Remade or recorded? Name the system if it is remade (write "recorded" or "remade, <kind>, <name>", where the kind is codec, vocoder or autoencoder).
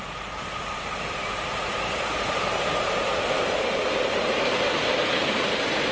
remade, vocoder, BigVGAN v2